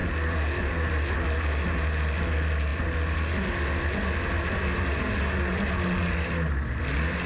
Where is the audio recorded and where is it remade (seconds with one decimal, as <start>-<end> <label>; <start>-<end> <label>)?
0.0-7.3 recorded